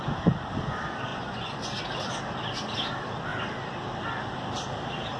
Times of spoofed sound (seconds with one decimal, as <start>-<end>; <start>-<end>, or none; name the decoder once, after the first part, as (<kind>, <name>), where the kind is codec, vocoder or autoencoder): 1.1-1.8 (vocoder, Vocos)